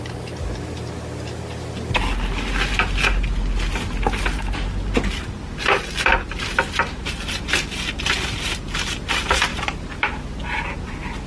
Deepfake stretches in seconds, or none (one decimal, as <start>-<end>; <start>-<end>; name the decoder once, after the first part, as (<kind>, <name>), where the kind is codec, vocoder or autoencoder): none